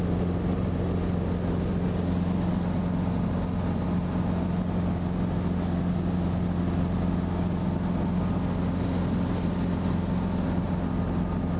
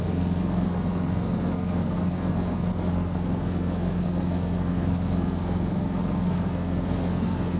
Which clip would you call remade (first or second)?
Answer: second